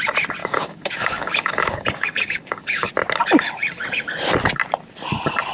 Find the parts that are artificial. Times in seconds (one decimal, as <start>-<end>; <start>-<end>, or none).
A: 0.4-2.9